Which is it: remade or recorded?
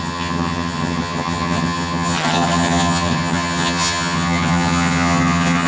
remade